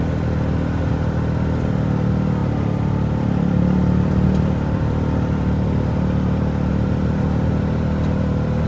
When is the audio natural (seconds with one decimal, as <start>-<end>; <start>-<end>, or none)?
0.0-2.4; 6.7-8.7